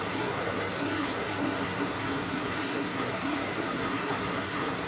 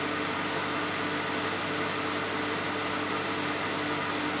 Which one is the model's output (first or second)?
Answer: first